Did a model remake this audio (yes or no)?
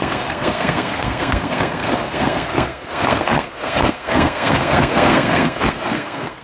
yes